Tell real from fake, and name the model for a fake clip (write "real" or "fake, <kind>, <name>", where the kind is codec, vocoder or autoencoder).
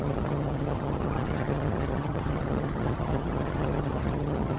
fake, vocoder, HiFi-GAN